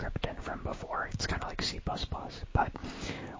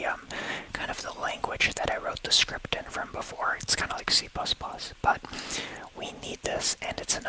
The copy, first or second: first